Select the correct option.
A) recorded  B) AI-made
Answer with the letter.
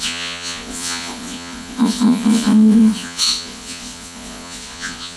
B